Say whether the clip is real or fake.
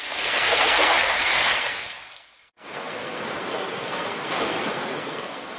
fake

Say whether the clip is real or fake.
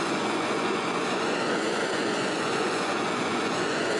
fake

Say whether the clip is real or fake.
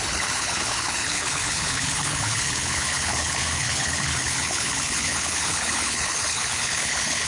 fake